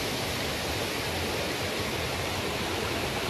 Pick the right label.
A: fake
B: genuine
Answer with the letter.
B